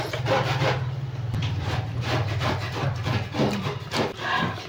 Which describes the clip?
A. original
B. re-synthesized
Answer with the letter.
B